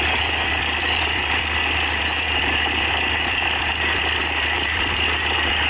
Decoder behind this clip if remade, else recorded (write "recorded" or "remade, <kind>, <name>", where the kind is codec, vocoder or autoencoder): recorded